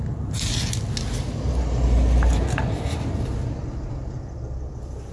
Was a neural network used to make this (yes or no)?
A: no